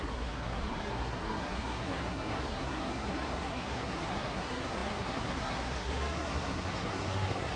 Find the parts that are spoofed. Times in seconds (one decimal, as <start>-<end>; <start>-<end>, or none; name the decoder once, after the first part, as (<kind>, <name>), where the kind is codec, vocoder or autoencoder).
0.0-7.6 (codec, SNAC)